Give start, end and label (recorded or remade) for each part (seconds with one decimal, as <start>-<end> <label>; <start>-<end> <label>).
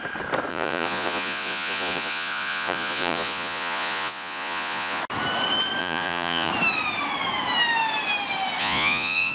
0.0-0.5 recorded; 0.5-5.0 remade; 5.0-5.8 recorded; 5.8-6.5 remade; 6.5-8.6 recorded; 8.6-9.3 remade